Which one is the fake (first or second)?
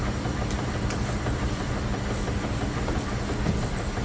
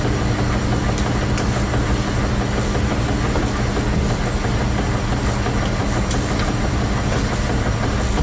first